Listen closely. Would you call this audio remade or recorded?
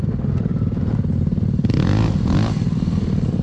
recorded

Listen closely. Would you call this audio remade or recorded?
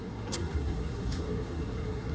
remade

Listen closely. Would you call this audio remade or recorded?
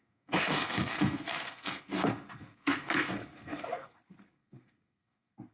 remade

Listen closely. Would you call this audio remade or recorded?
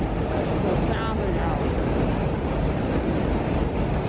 recorded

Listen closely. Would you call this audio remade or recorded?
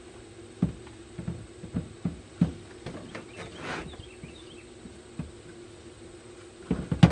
recorded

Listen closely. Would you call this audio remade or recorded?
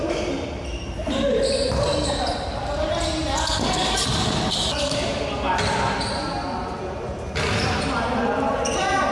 recorded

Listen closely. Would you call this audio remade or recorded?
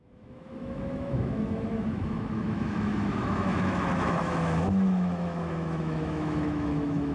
remade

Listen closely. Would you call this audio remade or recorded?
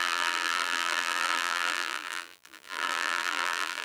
remade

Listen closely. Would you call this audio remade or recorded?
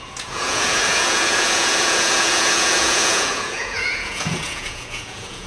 remade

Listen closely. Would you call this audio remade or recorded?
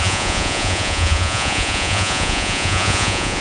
remade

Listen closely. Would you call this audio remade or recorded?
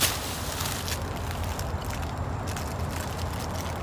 recorded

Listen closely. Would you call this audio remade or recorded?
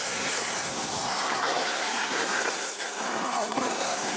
remade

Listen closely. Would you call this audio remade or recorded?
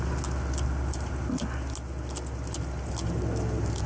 recorded